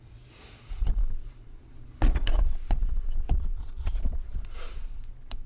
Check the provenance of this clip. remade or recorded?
remade